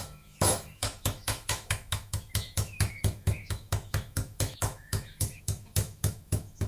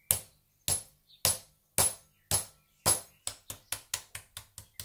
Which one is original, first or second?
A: second